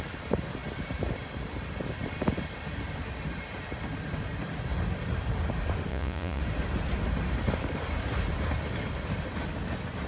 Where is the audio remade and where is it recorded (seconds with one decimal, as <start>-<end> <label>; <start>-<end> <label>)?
0.0-5.9 recorded; 5.9-6.4 remade; 6.4-10.1 recorded

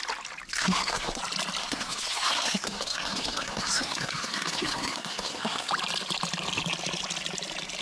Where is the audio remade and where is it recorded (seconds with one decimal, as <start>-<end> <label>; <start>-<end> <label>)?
0.0-0.5 recorded; 0.5-1.2 remade; 1.2-1.6 recorded; 1.6-5.7 remade; 5.7-7.8 recorded

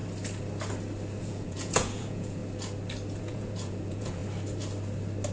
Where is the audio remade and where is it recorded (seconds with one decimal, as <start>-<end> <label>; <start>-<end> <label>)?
0.0-1.2 recorded; 1.2-2.4 remade; 2.4-3.2 recorded; 3.2-4.2 remade; 4.2-5.3 recorded

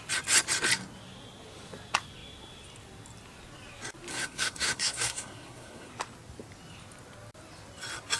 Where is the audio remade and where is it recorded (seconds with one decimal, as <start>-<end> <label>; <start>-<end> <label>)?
0.0-4.1 recorded; 4.1-5.9 remade; 5.9-8.2 recorded

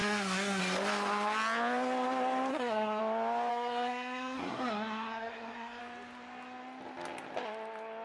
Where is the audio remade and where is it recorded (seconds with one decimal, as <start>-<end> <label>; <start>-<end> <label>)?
0.0-0.6 remade; 0.6-2.5 recorded; 2.5-3.0 remade; 3.0-3.5 recorded; 3.5-5.8 remade; 5.8-8.0 recorded

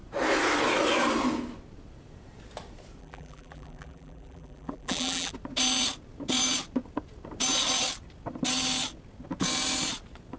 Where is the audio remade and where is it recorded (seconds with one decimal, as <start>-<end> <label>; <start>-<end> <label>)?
0.0-3.0 recorded; 3.0-5.3 remade; 5.3-10.4 recorded